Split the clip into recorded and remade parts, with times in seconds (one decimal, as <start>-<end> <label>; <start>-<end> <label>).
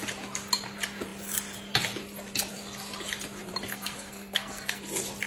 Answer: 0.0-3.7 recorded; 3.7-4.8 remade; 4.8-5.3 recorded